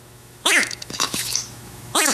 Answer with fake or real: fake